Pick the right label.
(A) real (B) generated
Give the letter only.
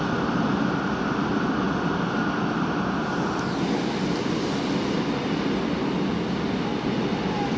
A